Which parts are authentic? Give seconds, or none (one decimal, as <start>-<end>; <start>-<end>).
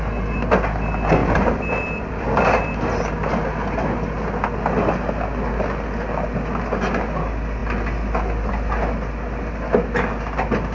0.0-1.2; 2.6-10.7